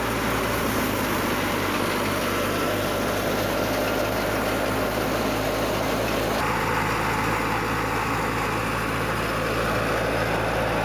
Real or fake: real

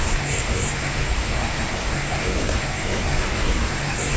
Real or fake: fake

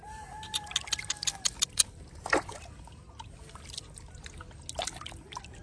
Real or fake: real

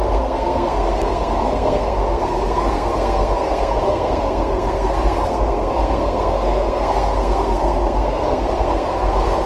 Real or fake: fake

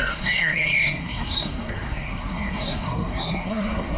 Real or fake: fake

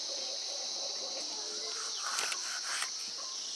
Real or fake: real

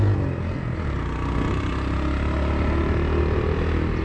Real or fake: real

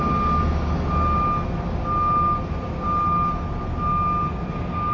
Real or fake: real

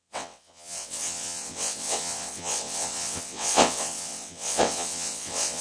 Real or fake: fake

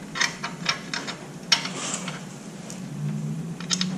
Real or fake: real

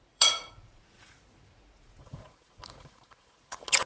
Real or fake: fake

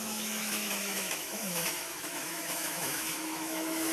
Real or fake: fake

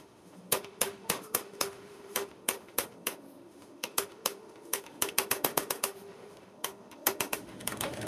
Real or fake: fake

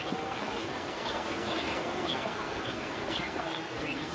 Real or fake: fake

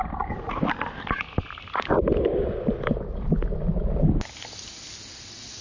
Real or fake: real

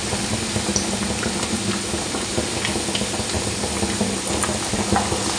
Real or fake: real